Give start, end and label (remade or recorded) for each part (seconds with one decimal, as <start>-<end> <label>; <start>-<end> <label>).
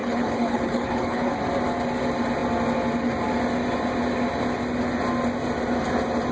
0.0-1.3 remade; 1.3-6.3 recorded